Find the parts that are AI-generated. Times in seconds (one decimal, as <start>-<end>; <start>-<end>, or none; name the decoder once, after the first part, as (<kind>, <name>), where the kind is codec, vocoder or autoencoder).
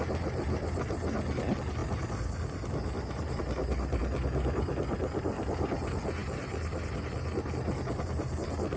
none